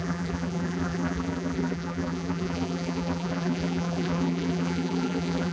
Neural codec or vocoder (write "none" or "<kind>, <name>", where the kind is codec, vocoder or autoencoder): vocoder, BigVGAN v2